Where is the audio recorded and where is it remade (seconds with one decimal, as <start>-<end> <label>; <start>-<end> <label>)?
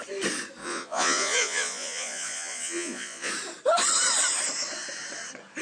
0.0-0.6 recorded; 0.6-3.3 remade; 3.3-5.6 recorded